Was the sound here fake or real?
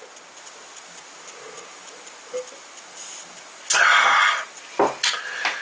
real